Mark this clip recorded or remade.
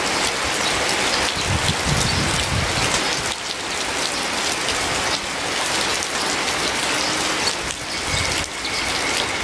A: recorded